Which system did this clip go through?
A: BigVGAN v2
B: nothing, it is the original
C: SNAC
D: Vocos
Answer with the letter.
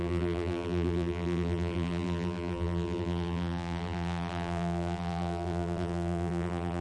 A